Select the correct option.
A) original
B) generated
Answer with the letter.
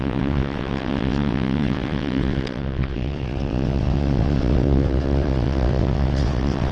B